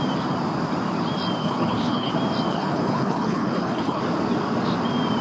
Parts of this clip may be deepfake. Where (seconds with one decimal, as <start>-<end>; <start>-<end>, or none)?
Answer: 1.4-2.1; 2.5-4.0